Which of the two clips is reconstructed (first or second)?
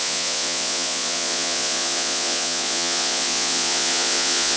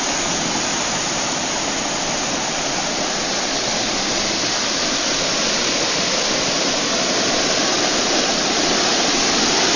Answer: first